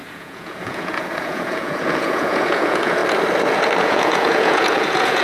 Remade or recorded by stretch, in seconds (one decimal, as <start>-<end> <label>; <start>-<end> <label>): 0.0-3.0 remade; 3.0-3.8 recorded; 3.8-5.2 remade